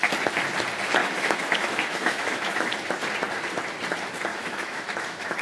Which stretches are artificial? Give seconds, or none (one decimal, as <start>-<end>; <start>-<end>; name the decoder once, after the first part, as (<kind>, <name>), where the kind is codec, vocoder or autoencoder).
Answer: 1.0-2.7 (autoencoder, DAC-VAE); 4.3-5.4